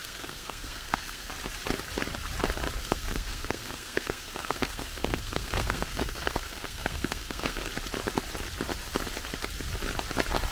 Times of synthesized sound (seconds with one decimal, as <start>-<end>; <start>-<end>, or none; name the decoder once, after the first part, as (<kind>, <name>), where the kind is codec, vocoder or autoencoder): 0.0-1.3 (codec, SNAC); 2.8-7.7